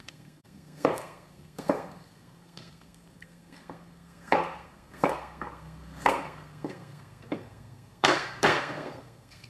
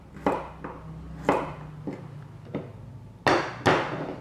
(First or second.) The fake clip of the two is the first